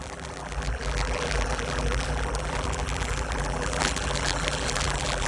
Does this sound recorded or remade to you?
remade